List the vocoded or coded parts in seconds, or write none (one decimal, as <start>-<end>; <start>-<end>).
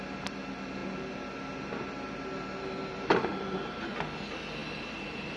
4.6-5.4